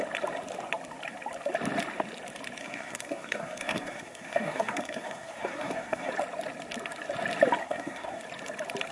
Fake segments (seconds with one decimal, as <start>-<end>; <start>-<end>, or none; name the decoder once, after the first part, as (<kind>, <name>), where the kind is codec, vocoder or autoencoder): 2.6-6.1 (codec, SNAC); 7.6-8.2